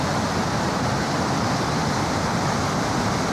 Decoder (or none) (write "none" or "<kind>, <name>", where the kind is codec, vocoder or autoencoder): vocoder, BigVGAN v2